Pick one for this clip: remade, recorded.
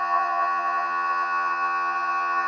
remade